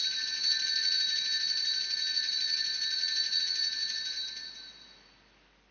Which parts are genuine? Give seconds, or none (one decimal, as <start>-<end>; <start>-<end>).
0.0-5.7